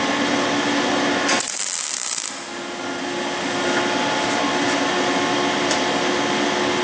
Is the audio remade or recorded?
recorded